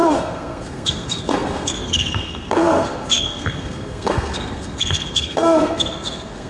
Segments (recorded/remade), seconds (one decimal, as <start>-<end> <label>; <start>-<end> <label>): 0.0-6.5 remade